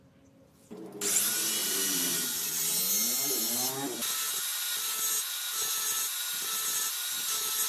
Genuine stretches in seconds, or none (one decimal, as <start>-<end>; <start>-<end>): 0.0-1.6; 2.5-7.7